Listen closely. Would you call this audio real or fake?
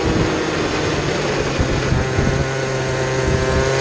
real